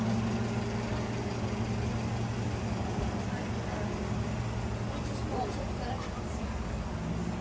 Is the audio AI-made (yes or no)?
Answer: no